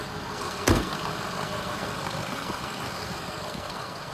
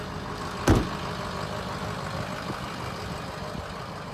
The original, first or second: second